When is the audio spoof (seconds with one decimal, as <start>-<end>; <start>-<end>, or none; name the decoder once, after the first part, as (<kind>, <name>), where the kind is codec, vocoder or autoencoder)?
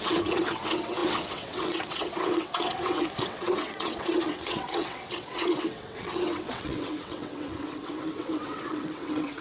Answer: 0.0-9.4 (vocoder, WaveNeXt)